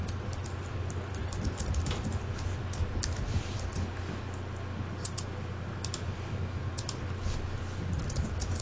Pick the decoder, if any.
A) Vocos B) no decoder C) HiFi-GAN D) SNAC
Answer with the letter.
B